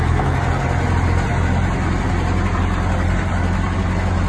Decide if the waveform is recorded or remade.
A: recorded